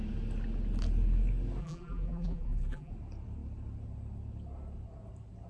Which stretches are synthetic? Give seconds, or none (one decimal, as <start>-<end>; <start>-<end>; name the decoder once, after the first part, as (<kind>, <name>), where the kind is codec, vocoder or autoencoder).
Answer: 1.6-2.9 (vocoder, BigVGAN v2)